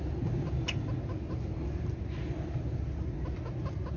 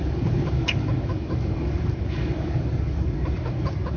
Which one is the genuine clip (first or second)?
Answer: first